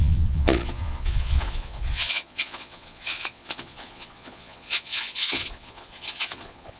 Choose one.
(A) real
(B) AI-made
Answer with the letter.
B